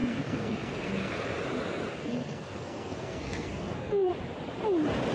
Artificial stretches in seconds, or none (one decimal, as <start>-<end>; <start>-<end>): 0.0-1.3; 2.0-4.1